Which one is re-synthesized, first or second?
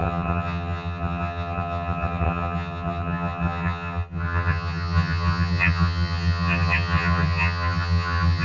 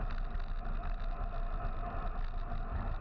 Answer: first